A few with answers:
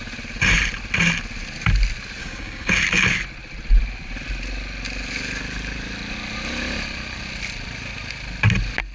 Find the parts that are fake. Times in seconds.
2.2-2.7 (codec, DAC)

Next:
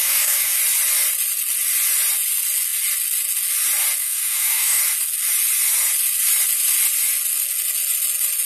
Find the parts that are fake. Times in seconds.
0.0-0.6 (codec, DAC); 4.0-4.8

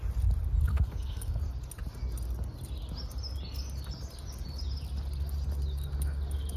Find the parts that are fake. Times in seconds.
0.7-1.4 (codec, SNAC)

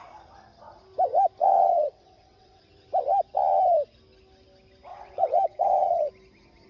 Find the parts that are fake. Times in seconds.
1.4-2.6 (vocoder, WaveNeXt); 4.9-6.1

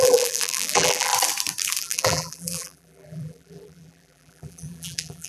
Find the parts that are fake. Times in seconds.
0.0-1.1 (vocoder, BigVGAN v2); 1.8-5.3

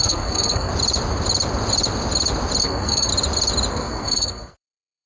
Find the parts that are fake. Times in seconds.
0.0-0.7 (codec, SNAC); 2.6-3.1; 3.7-5.1

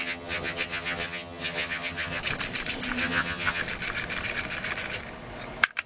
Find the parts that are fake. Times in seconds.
0.0-2.2 (vocoder, HiFi-GAN); 3.0-3.6

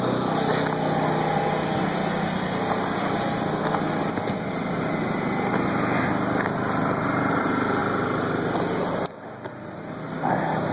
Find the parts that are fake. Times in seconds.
none